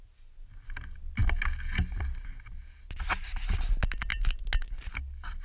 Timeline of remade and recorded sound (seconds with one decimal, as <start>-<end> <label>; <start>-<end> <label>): 0.0-5.4 recorded